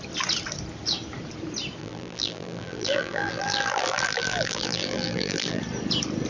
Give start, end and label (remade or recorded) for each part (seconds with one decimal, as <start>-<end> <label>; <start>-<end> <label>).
0.0-1.8 recorded; 1.8-5.6 remade; 5.6-6.3 recorded